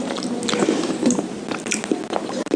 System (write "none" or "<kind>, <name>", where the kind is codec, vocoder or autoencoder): none